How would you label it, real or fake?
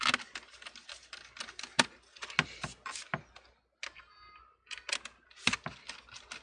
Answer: real